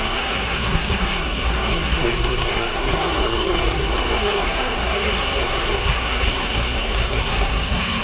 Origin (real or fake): fake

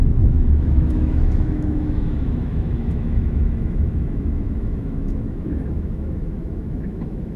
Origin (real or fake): fake